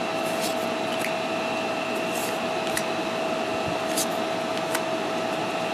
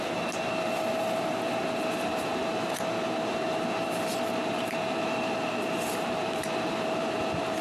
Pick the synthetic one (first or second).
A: second